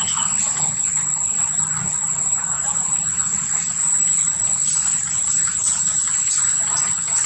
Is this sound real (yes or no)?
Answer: yes